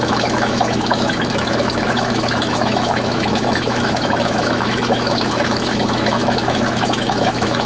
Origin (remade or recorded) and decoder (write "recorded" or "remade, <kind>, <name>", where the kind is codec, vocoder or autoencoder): remade, autoencoder, DAC-VAE